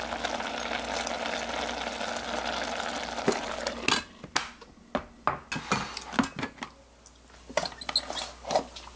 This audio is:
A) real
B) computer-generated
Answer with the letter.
A